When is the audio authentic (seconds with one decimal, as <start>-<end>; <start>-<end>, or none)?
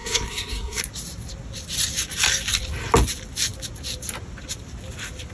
0.8-5.3